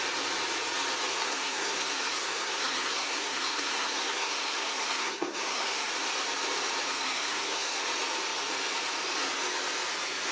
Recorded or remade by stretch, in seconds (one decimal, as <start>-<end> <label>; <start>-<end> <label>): 0.0-1.1 recorded; 1.1-5.9 remade; 5.9-6.9 recorded; 6.9-7.8 remade; 7.8-10.3 recorded